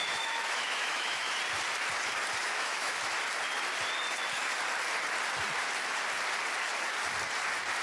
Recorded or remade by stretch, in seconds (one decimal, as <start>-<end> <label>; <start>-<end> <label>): 0.0-1.4 remade; 1.4-2.4 recorded; 2.4-3.0 remade; 3.0-7.8 recorded